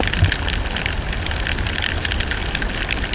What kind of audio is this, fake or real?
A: fake